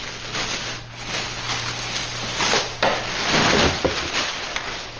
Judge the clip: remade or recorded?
recorded